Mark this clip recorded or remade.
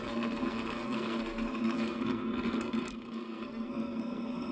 remade